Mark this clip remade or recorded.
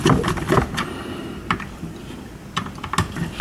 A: recorded